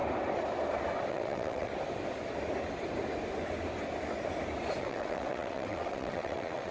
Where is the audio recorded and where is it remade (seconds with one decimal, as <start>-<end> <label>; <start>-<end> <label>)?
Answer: 0.0-1.1 recorded; 1.1-1.7 remade; 1.7-4.8 recorded; 4.8-6.7 remade